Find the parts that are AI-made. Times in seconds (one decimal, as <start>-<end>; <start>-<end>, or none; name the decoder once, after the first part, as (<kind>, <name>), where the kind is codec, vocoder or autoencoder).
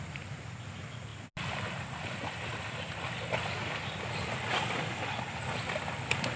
none